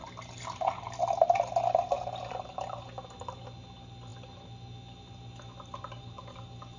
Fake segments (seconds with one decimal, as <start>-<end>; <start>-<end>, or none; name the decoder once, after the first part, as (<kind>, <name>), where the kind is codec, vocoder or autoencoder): none